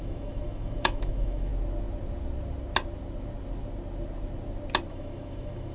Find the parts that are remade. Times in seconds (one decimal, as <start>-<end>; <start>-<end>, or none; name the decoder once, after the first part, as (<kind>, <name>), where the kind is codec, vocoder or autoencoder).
0.0-1.5 (autoencoder, DAC-VAE); 4.9-5.7

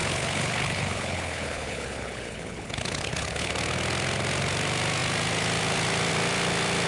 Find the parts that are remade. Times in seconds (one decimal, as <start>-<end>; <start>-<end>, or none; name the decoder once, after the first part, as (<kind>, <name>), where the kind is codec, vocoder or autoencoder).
0.0-3.5 (codec, HILCodec)

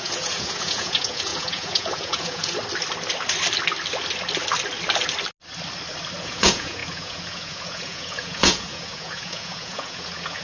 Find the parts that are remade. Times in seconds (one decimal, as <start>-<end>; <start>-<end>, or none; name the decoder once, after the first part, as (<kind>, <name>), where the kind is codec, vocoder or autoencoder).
0.0-2.6 (vocoder, Vocos); 6.2-10.4

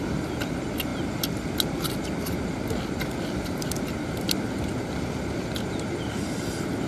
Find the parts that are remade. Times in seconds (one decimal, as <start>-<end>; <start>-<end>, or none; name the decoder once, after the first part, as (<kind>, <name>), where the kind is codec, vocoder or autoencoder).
none

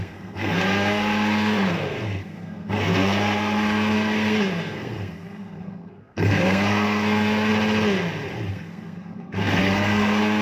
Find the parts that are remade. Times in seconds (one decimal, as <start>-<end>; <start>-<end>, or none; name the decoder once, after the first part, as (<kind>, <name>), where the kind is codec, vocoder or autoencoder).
0.0-7.5 (codec, SNAC); 8.5-10.4

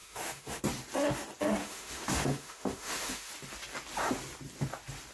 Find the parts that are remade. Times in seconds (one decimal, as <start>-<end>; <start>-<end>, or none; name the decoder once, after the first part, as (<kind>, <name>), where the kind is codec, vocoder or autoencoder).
0.0-0.6 (autoencoder, DAC-VAE); 1.6-3.3

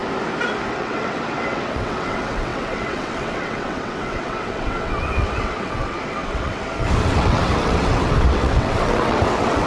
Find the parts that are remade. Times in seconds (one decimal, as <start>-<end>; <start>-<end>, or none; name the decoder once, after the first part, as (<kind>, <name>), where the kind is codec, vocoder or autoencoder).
0.7-9.7 (vocoder, WaveNeXt)